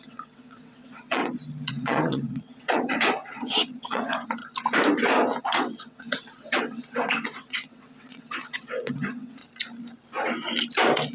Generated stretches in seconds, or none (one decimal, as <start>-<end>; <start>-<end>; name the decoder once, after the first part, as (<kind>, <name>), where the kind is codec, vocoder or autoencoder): 0.0-1.2 (vocoder, WaveNeXt); 1.7-4.4; 5.4-9.4